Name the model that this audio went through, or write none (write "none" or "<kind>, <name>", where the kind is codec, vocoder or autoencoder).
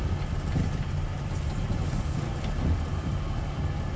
none